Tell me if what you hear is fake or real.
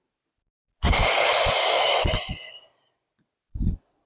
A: real